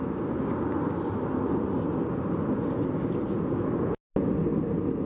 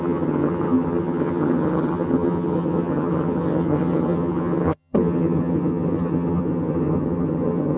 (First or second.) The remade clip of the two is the second